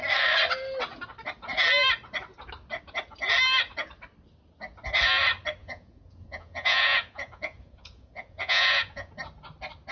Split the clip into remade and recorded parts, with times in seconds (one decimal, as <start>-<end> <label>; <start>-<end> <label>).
0.0-5.6 recorded; 5.6-9.1 remade; 9.1-9.9 recorded

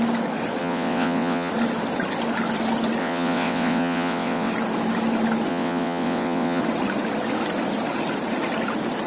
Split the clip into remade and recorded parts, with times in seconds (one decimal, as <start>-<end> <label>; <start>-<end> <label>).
0.0-0.6 recorded; 0.6-1.5 remade; 1.5-3.0 recorded; 3.0-4.5 remade; 4.5-5.5 recorded; 5.5-6.6 remade; 6.6-9.1 recorded

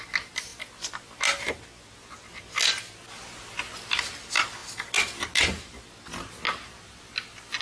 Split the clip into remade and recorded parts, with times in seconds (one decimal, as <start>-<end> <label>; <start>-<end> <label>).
0.0-7.6 recorded

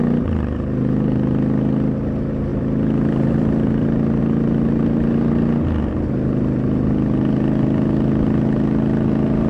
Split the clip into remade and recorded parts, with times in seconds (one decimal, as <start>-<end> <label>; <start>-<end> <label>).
0.0-2.5 recorded; 2.5-4.2 remade; 4.2-9.5 recorded